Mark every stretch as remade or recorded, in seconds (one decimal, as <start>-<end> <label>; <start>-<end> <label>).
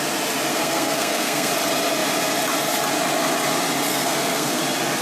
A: 0.0-0.5 recorded; 0.5-1.5 remade; 1.5-3.9 recorded; 3.9-4.6 remade; 4.6-5.0 recorded